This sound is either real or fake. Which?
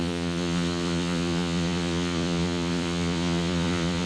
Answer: fake